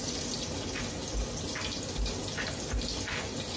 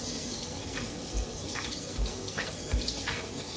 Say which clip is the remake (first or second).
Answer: second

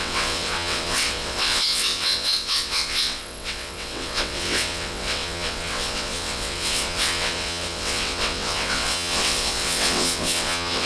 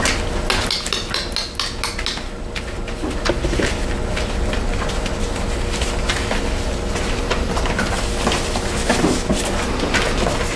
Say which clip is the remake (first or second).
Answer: first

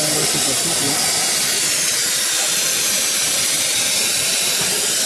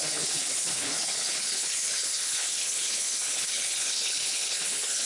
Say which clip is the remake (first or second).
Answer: second